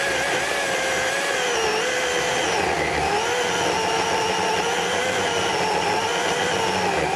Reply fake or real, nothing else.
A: real